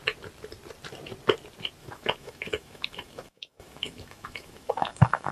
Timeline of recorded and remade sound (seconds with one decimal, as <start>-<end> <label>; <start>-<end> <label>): 0.0-1.8 recorded; 1.8-5.3 remade